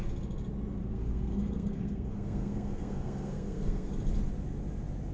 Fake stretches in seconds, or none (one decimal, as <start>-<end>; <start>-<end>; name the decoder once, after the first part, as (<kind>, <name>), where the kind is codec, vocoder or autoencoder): 0.8-3.9 (codec, SNAC)